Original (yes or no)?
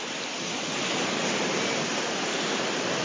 yes